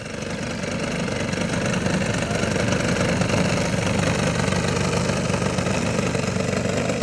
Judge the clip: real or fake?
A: real